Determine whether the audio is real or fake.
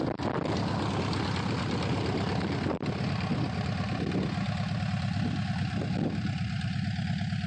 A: real